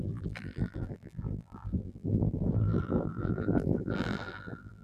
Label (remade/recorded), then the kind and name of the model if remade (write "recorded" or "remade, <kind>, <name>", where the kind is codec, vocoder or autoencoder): remade, vocoder, BigVGAN v2